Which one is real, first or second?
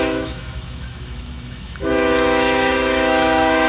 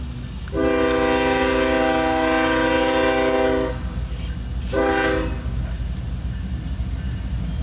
second